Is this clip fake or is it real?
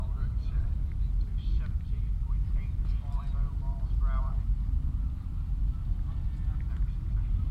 fake